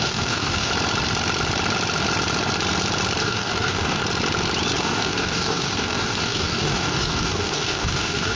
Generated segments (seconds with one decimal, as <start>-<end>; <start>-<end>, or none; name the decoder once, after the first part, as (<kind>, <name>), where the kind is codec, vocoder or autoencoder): 0.0-0.7 (codec, DAC); 3.2-4.0; 4.8-8.4